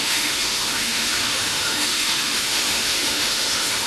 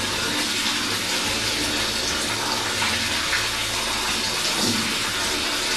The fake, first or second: first